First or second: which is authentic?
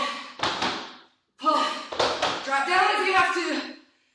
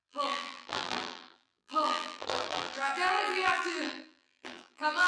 first